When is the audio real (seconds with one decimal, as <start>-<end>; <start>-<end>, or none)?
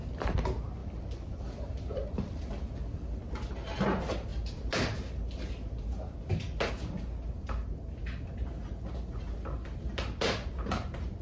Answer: 0.0-0.8; 2.7-11.2